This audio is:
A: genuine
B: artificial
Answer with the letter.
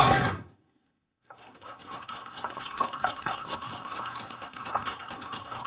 B